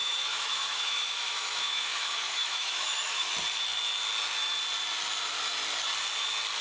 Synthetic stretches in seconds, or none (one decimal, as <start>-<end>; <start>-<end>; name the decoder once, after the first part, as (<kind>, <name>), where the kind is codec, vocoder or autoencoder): 0.0-3.3 (autoencoder, DAC-VAE)